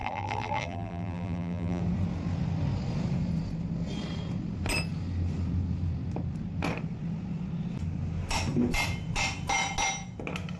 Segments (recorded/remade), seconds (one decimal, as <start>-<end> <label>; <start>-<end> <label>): 0.0-1.8 remade; 1.8-10.6 recorded